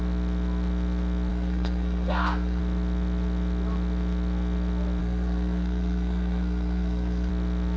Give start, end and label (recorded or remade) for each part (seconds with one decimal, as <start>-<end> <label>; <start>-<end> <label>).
0.0-1.3 recorded; 1.3-2.6 remade; 2.6-5.0 recorded; 5.0-7.3 remade; 7.3-7.8 recorded